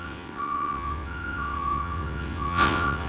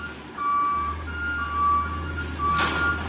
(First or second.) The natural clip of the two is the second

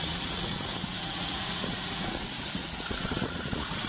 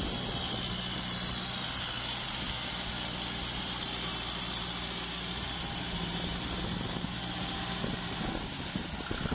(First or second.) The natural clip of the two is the second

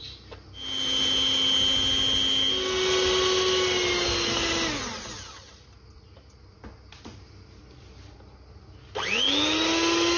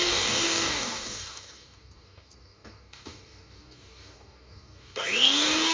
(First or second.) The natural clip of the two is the first